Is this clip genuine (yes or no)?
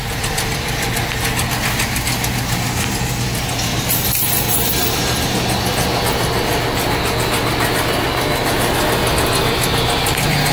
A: yes